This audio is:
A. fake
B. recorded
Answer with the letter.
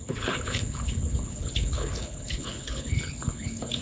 A